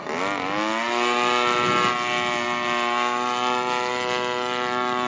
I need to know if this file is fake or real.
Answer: real